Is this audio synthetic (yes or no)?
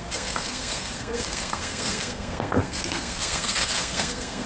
yes